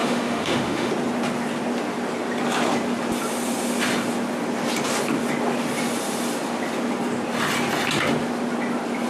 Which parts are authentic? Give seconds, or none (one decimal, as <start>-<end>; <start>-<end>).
0.9-9.1

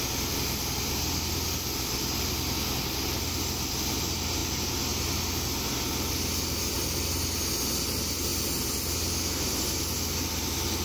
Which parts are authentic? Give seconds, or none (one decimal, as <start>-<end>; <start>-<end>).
0.0-10.8

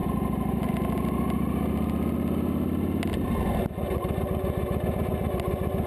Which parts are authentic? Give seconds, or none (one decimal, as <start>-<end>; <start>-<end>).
0.0-5.9

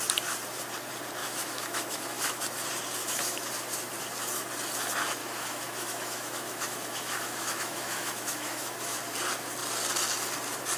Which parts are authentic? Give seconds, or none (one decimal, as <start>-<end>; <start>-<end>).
0.0-1.2; 2.4-3.0; 3.5-5.2; 9.0-10.8

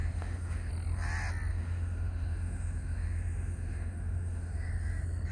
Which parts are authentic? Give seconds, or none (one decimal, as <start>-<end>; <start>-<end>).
0.7-1.5; 4.7-5.3

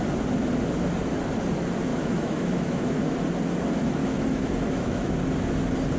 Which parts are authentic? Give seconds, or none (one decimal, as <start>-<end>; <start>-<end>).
0.0-1.9; 3.0-4.0; 5.1-6.0

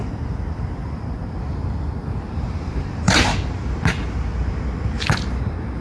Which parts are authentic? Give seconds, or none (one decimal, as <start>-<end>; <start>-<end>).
0.0-0.8; 1.6-2.0; 3.7-5.8